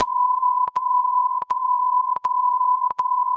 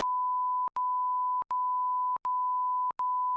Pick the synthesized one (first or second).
first